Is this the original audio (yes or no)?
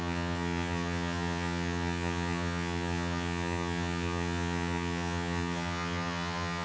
no